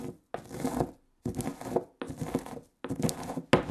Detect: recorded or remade recorded